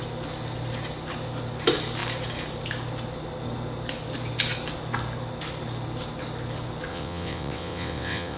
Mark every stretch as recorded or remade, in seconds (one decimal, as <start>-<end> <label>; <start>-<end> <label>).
0.0-6.9 recorded; 6.9-8.4 remade